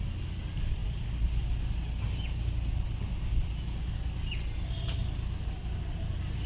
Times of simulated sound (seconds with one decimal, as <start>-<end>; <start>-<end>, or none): none